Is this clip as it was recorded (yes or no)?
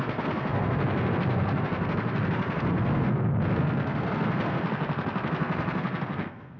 no